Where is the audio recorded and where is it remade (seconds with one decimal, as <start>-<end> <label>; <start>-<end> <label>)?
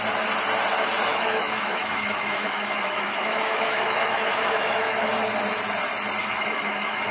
0.0-1.1 recorded; 1.1-5.1 remade; 5.1-6.2 recorded; 6.2-7.1 remade